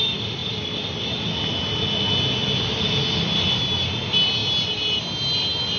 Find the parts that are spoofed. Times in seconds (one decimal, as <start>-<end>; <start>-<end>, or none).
none